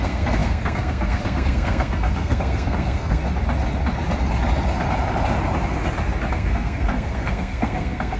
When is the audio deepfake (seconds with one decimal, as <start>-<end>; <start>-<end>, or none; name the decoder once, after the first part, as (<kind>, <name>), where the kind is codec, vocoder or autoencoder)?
0.0-3.2 (codec, SNAC); 6.3-8.2